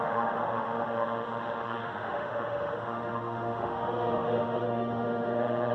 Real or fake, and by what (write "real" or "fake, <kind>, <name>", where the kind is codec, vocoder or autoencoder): fake, autoencoder, DAC-VAE